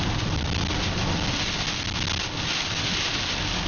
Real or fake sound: real